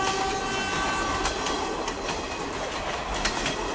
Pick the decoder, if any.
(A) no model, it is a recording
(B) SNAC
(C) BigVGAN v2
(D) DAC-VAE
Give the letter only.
A